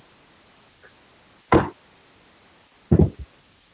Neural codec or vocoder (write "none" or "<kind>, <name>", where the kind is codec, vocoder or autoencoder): none